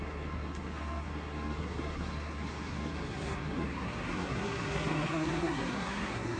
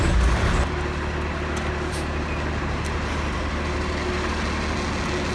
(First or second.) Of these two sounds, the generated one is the first